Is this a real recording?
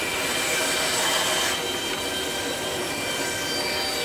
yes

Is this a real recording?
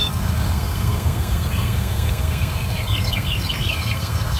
no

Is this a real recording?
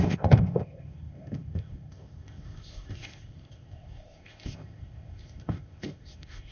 no